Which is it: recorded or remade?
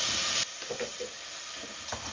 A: recorded